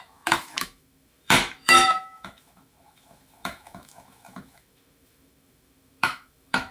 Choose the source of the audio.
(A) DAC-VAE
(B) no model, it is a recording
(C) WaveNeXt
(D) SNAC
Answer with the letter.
A